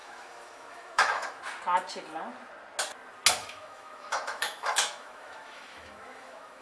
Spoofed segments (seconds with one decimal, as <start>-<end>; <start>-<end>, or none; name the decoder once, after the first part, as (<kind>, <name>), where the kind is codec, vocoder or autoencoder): 0.0-1.4 (autoencoder, DAC-VAE); 3.4-6.6